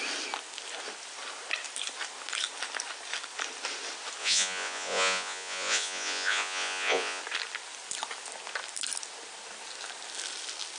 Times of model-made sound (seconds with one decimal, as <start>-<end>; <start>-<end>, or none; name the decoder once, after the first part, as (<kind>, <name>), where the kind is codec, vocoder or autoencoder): 4.2-7.2 (vocoder, Vocos)